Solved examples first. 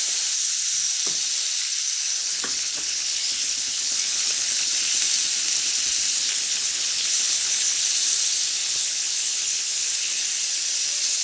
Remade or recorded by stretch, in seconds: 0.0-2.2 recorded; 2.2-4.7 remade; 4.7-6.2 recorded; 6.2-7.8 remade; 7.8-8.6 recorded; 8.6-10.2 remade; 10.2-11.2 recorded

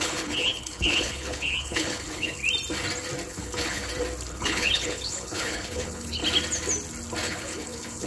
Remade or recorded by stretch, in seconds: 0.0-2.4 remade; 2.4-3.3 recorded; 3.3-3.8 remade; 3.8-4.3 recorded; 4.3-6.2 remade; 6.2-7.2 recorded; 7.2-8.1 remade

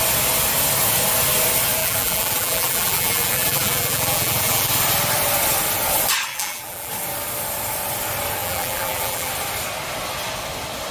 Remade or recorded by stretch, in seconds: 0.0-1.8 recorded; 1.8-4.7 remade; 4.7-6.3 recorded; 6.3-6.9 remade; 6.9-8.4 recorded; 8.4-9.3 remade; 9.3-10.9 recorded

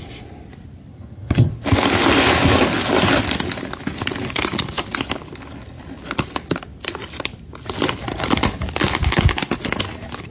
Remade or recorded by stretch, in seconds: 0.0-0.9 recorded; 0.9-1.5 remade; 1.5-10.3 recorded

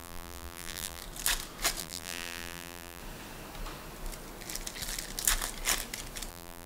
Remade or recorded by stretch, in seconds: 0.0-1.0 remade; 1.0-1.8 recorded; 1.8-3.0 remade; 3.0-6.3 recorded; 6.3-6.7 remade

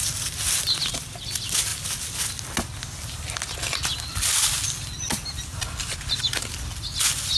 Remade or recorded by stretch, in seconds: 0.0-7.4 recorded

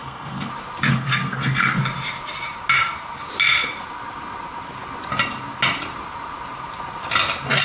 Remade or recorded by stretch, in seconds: 0.0-0.5 remade; 0.5-0.9 recorded; 0.9-1.8 remade; 1.8-7.6 recorded